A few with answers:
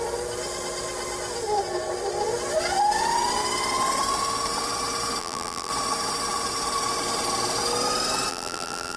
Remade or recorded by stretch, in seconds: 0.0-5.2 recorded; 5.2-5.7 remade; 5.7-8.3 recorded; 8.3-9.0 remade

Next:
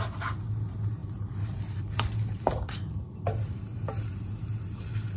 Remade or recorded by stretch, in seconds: 0.0-1.0 recorded; 1.0-4.1 remade; 4.1-5.2 recorded

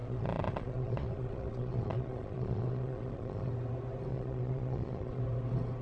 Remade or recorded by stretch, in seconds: 0.0-3.5 remade; 3.5-4.1 recorded; 4.1-5.2 remade; 5.2-5.8 recorded